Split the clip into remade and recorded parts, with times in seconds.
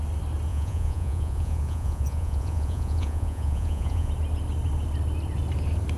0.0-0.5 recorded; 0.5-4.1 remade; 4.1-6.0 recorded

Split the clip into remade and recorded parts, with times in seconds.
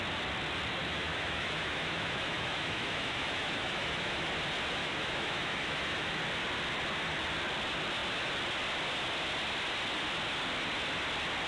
0.0-0.8 recorded; 0.8-4.3 remade; 4.3-4.8 recorded; 4.8-6.2 remade; 6.2-11.5 recorded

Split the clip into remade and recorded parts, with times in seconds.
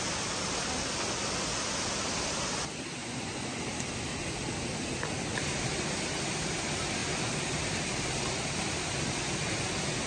0.0-3.0 recorded; 3.0-3.6 remade; 3.6-10.1 recorded